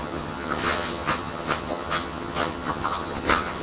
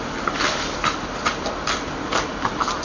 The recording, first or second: second